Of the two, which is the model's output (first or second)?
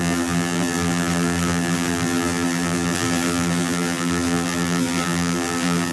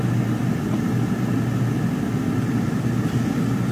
first